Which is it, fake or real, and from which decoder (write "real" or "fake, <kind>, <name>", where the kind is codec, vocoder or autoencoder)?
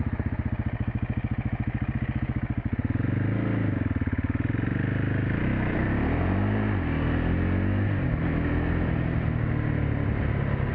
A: real